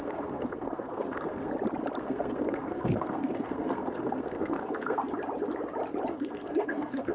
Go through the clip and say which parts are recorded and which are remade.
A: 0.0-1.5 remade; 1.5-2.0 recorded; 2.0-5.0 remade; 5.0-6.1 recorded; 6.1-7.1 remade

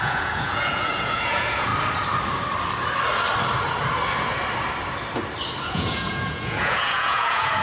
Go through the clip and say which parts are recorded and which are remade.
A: 0.0-1.7 remade; 1.7-5.6 recorded; 5.6-7.6 remade

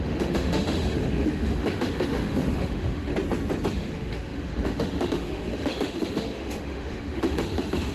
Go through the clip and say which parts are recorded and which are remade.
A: 0.0-3.1 remade; 3.1-3.7 recorded; 3.7-7.9 remade

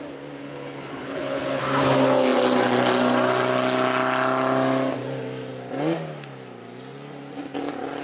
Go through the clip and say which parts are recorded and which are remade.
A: 0.0-0.4 recorded; 0.4-1.6 remade; 1.6-8.0 recorded

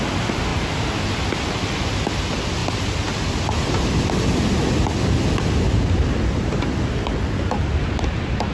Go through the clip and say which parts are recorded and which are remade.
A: 0.0-8.5 recorded

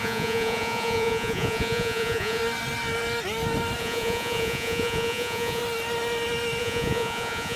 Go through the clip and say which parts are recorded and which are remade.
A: 0.0-2.4 remade; 2.4-3.8 recorded; 3.8-5.6 remade; 5.6-6.6 recorded; 6.6-7.6 remade

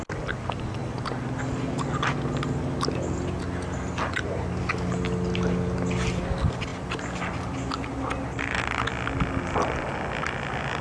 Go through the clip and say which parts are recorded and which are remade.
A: 0.0-10.8 recorded